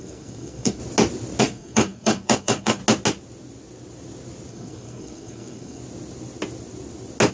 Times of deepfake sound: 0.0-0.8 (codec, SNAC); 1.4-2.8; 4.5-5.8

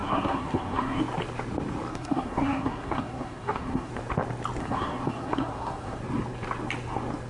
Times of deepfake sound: 0.0-1.0 (codec, SNAC); 1.9-3.9; 4.6-6.0

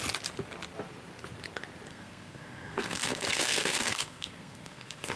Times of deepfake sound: 1.9-5.2 (codec, SNAC)